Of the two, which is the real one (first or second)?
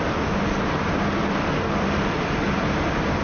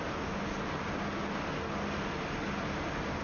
second